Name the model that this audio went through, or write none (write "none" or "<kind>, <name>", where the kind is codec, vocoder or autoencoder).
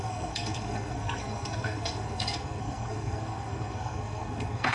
codec, SNAC